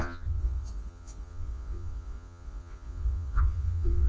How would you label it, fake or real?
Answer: fake